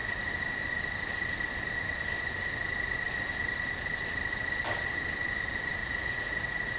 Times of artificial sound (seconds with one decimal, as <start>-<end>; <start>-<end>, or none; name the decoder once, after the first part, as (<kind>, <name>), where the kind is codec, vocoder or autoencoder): 5.8-6.8 (vocoder, Vocos)